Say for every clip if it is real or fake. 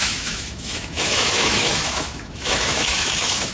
fake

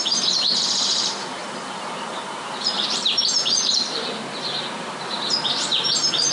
fake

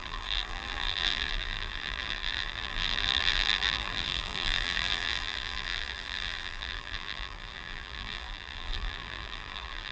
fake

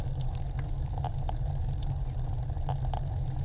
real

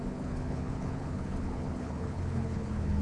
fake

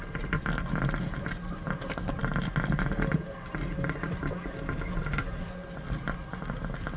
real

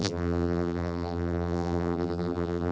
fake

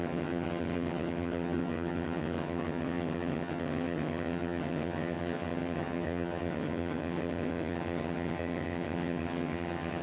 fake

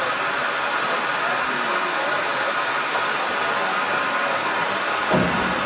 real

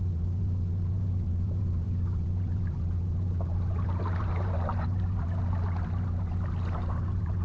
fake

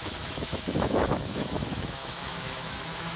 fake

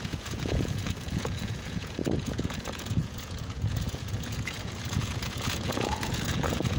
fake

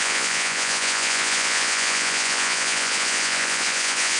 fake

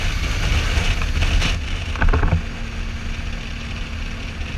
real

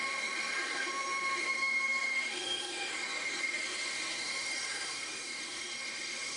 fake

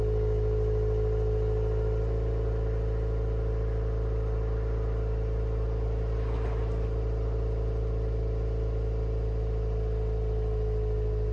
real